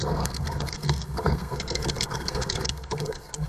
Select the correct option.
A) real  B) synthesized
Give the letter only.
B